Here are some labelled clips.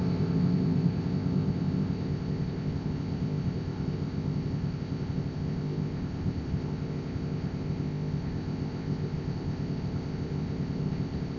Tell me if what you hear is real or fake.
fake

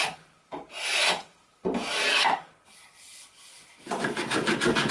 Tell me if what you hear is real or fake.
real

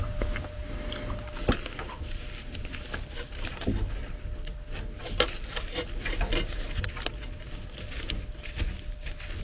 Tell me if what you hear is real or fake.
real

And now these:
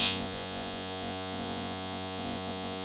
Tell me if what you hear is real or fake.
fake